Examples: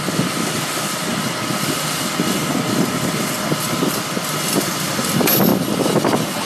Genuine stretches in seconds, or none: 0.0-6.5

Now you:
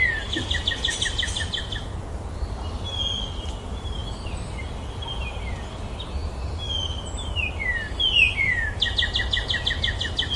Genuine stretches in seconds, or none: 0.0-10.4

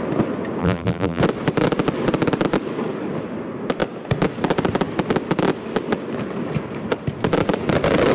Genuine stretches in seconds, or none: 0.0-0.6; 1.2-8.1